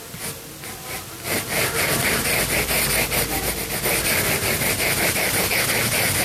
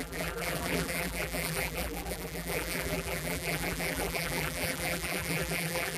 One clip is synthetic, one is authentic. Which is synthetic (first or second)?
second